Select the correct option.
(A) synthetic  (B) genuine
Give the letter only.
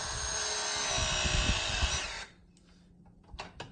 B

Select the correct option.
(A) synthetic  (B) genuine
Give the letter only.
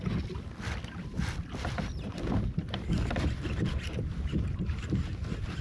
B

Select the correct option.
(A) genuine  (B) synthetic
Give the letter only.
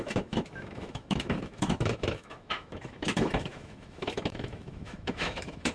B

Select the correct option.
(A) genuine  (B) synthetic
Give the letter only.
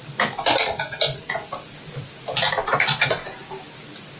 A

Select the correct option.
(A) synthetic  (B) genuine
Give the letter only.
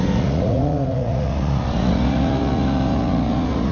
A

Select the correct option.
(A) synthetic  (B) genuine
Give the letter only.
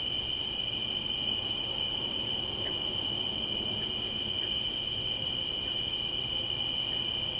B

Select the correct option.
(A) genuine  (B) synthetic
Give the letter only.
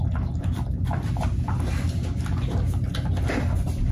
A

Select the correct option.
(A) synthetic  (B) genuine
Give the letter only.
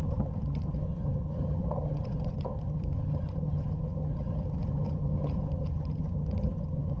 A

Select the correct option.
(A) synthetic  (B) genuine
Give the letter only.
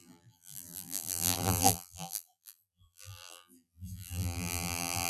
A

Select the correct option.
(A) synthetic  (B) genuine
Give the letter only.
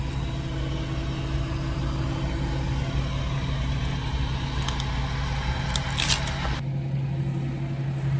B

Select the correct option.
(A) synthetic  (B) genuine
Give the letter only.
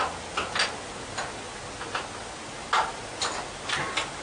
B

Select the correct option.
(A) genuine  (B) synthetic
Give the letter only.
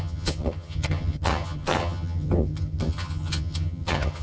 B